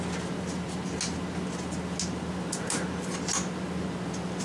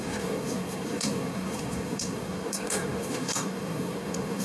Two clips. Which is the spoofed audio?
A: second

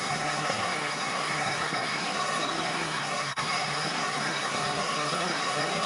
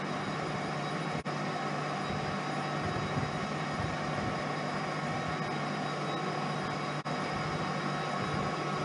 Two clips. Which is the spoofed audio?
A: first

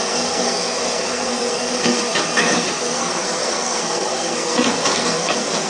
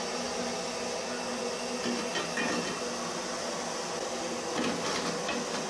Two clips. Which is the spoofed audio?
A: first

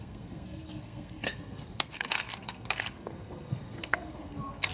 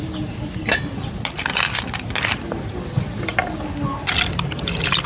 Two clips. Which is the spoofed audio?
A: first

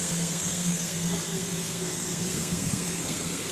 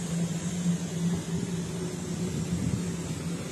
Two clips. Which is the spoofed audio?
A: first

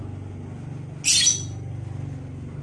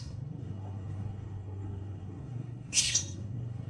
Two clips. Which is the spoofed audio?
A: second